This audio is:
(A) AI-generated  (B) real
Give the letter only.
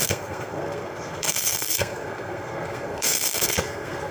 A